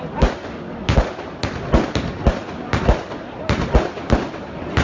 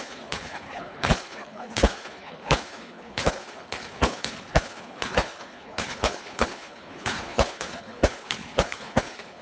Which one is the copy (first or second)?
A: second